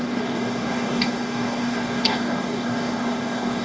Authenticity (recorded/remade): remade